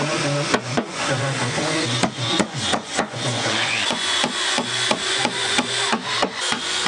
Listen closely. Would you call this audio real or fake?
fake